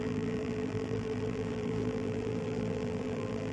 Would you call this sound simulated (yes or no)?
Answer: yes